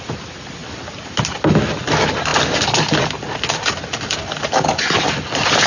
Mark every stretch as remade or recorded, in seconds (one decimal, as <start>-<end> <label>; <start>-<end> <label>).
0.0-5.7 recorded